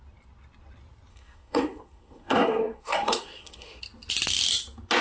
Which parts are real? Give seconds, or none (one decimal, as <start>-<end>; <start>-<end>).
0.0-1.1; 3.8-5.0